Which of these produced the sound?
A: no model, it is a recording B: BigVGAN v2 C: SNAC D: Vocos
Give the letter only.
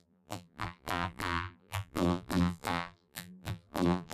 B